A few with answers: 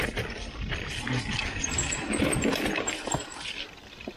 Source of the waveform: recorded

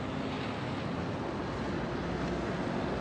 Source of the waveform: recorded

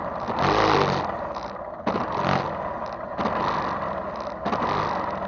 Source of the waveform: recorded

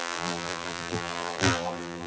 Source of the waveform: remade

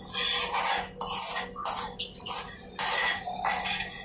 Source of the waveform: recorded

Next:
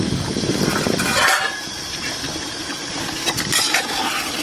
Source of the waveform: recorded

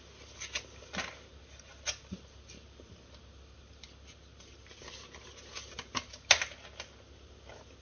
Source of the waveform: recorded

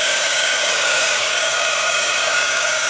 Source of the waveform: remade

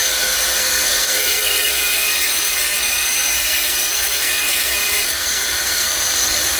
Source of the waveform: remade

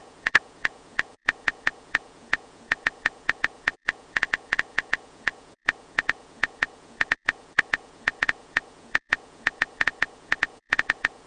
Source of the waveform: remade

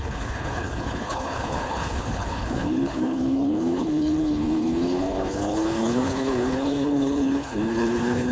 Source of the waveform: remade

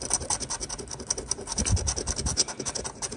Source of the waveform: recorded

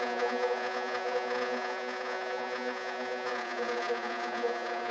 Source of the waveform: remade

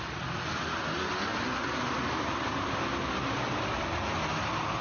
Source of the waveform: recorded